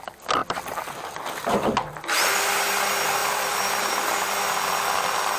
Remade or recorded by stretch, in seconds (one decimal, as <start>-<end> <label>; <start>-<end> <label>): 0.0-0.4 recorded; 0.4-1.2 remade; 1.2-3.2 recorded; 3.2-3.9 remade; 3.9-5.4 recorded